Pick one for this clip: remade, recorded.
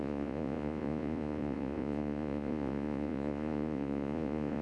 remade